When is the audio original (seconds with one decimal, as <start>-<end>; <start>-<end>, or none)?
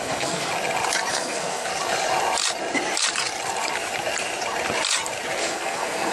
0.5-1.1; 1.7-5.4